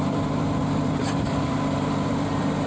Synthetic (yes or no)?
yes